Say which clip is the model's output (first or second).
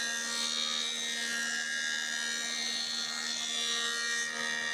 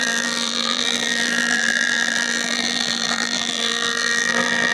second